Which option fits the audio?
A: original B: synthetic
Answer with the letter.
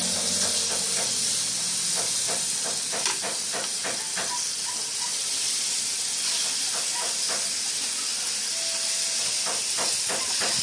A